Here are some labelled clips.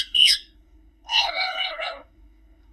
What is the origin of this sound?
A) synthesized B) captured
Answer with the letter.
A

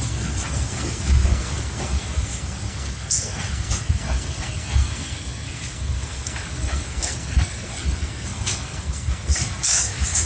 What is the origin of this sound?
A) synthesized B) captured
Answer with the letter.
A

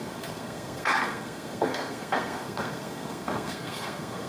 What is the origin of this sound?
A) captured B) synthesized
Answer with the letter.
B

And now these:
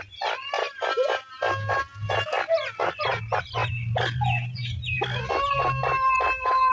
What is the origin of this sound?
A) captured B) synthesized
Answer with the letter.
A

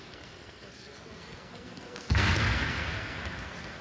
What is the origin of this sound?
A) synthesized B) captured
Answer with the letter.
A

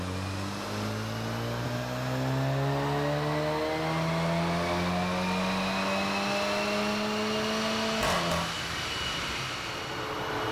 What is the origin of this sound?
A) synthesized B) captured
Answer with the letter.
B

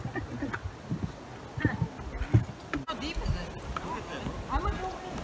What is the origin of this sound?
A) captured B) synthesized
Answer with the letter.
A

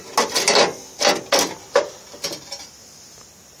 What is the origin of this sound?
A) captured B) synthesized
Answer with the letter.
A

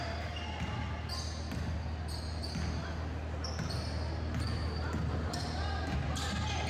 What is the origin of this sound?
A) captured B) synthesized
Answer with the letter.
A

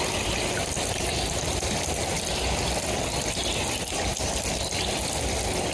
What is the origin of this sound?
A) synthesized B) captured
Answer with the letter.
B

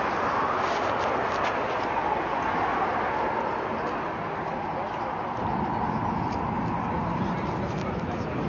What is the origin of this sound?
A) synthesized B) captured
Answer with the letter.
B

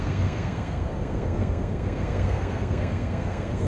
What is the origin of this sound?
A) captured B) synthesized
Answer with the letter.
B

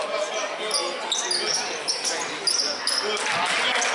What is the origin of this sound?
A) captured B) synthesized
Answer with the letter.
A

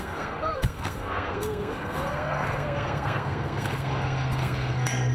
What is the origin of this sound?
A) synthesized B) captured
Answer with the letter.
A